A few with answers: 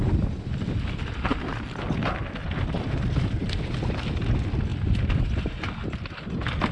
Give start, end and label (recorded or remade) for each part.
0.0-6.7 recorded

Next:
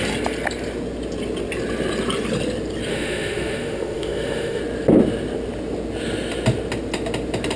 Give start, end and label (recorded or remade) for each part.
0.0-2.9 recorded; 2.9-4.6 remade; 4.6-7.6 recorded

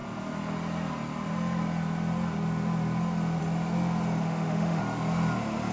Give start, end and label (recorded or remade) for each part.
0.0-4.2 recorded; 4.2-4.8 remade; 4.8-5.7 recorded

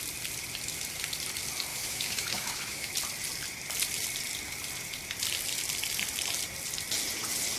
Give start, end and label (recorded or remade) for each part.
0.0-1.7 recorded; 1.7-2.9 remade; 2.9-7.6 recorded

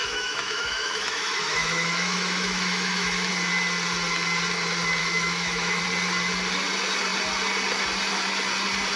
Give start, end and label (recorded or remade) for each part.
0.0-3.3 remade; 3.3-5.0 recorded; 5.0-5.8 remade; 5.8-9.0 recorded